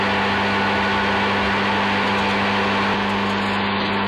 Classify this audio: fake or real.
real